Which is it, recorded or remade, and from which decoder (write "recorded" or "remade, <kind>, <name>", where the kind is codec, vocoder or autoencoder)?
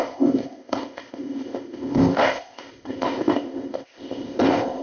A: remade, codec, ZipCodec